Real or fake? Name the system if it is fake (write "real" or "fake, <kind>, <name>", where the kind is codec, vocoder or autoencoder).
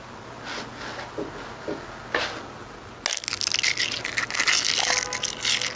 real